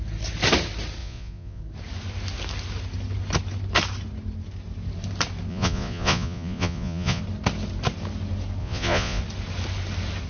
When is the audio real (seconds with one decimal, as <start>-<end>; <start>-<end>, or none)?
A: 0.0-1.0; 1.6-5.5; 7.2-8.6; 9.2-10.3